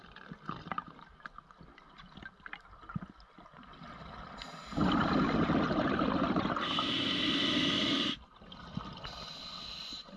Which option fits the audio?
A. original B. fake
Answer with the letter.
A